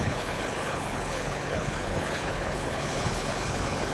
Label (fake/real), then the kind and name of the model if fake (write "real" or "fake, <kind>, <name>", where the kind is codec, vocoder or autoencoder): fake, codec, HILCodec